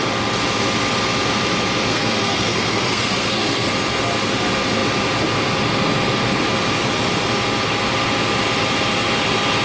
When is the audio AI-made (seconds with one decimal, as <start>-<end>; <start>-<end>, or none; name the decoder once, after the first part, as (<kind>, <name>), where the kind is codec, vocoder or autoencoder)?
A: 1.9-3.7 (codec, SNAC)